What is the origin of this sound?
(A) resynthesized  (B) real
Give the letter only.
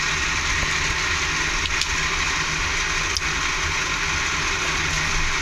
B